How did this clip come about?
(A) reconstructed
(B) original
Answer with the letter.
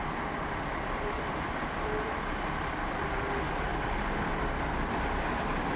A